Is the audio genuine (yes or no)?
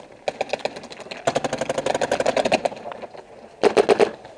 yes